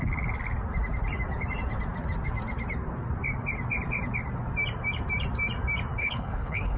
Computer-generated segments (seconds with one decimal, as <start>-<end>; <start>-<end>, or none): 6.0-6.8